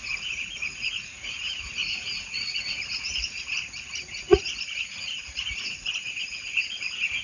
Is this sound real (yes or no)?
no